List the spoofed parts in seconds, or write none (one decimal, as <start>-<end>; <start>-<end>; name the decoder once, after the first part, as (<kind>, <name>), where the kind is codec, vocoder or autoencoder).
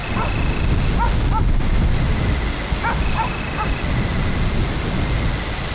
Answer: none